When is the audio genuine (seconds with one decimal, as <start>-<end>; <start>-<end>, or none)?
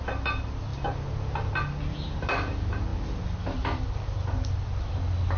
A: 0.0-5.4